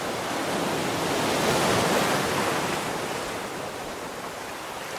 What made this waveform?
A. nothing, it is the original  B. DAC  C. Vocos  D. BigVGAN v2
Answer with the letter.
A